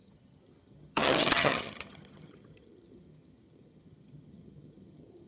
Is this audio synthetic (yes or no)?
yes